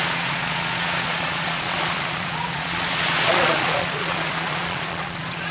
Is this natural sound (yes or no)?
no